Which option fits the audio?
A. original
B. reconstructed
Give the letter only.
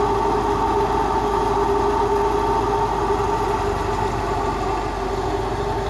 A